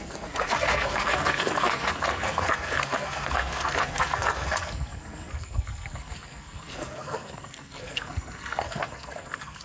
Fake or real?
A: fake